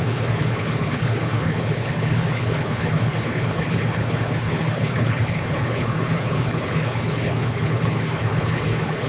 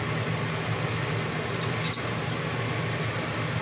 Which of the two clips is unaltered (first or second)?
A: second